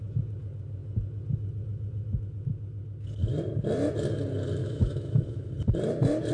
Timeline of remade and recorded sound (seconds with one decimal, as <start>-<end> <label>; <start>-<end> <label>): 0.0-4.6 recorded; 4.6-5.5 remade; 5.5-6.3 recorded